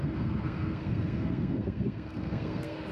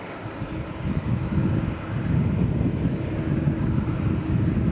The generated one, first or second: first